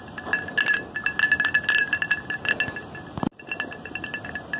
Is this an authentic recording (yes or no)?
yes